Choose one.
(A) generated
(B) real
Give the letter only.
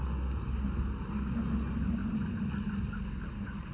B